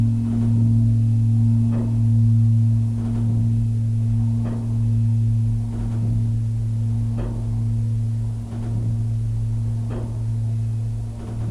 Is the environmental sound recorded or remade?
recorded